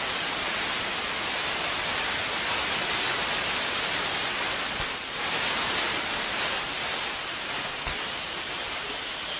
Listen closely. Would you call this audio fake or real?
real